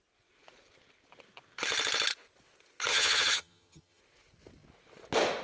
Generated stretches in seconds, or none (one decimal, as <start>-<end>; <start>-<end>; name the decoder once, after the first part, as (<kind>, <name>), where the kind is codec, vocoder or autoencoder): 2.9-4.0 (vocoder, HiFi-GAN)